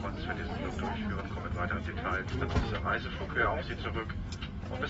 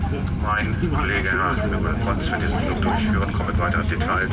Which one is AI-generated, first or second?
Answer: second